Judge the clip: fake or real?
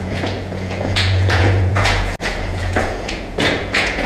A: fake